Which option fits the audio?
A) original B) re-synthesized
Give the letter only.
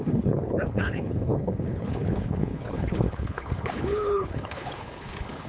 B